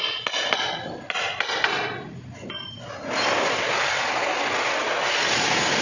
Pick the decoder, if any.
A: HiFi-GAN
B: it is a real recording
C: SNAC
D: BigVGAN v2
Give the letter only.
B